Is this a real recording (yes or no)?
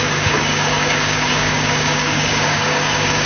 no